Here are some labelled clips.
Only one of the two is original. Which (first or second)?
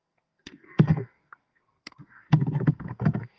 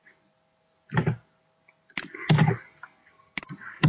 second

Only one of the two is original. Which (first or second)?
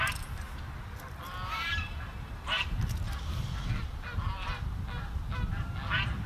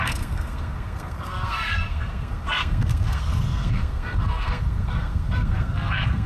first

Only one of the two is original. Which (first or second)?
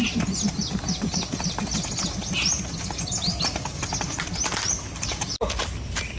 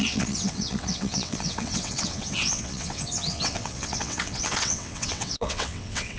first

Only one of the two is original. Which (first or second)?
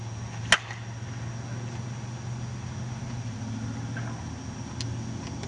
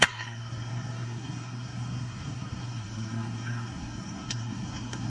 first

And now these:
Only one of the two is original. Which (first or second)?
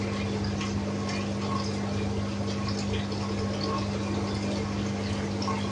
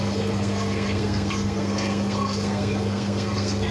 first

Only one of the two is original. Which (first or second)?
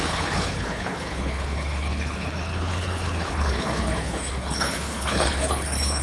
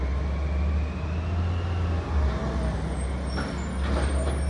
second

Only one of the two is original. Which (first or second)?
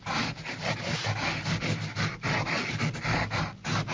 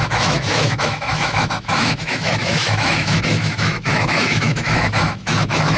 first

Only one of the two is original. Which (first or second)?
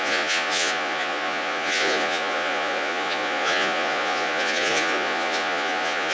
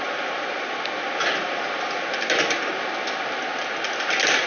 second